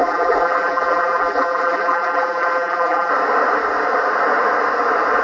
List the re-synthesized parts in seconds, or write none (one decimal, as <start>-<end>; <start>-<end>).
0.0-3.1